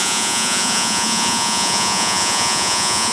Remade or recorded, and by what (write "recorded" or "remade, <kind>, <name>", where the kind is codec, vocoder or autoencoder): remade, vocoder, Vocos